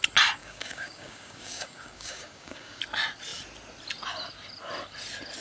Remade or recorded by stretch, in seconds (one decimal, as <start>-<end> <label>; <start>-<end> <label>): 0.0-0.4 recorded; 0.4-2.8 remade; 2.8-5.4 recorded